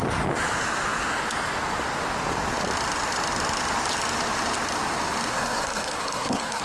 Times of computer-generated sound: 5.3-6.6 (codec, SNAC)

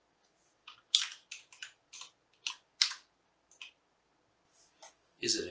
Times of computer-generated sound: none

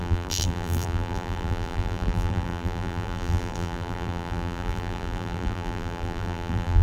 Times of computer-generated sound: 0.0-6.8 (vocoder, BigVGAN v2)

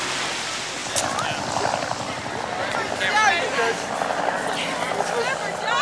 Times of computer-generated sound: none

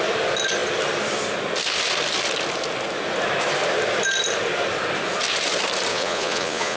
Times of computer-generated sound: 5.9-6.8 (vocoder, Vocos)

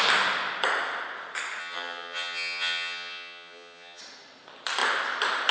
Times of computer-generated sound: 1.6-4.0 (vocoder, HiFi-GAN)